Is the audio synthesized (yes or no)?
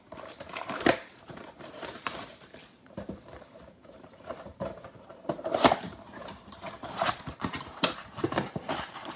yes